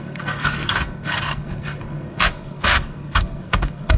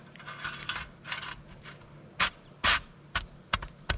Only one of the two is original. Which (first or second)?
second